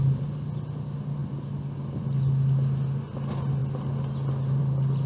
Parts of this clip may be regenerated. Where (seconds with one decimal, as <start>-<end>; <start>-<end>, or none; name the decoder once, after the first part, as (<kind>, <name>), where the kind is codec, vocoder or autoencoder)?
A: none